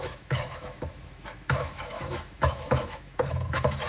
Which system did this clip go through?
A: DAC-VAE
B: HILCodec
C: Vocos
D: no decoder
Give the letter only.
A